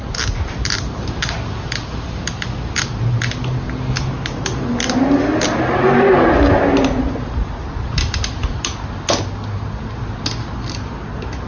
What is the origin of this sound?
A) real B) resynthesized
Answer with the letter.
A